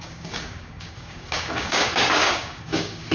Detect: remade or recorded remade